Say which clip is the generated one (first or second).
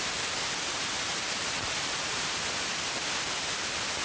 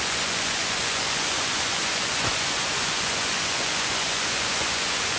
second